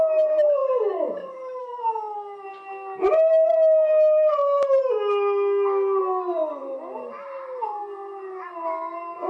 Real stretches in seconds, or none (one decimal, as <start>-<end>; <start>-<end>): 0.0-9.3